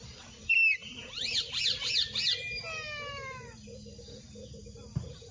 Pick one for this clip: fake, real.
real